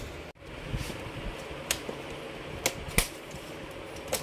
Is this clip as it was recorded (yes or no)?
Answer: yes